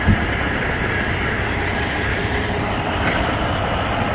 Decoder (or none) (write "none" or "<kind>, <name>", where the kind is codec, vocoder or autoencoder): vocoder, BigVGAN v2